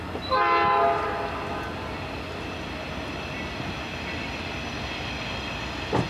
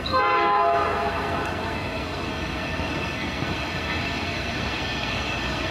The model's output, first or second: second